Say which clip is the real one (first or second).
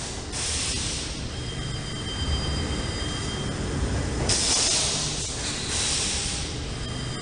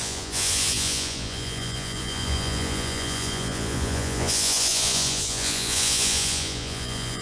first